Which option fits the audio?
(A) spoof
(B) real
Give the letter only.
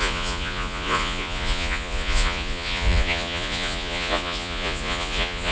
A